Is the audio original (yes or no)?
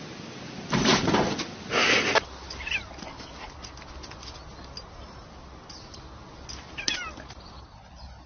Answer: yes